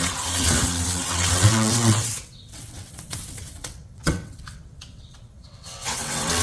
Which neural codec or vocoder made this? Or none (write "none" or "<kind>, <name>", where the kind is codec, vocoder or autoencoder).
vocoder, WaveNeXt